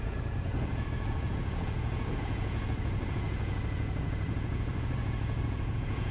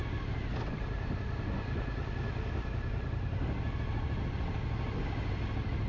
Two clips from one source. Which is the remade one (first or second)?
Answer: first